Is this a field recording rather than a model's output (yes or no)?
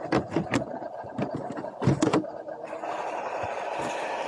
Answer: yes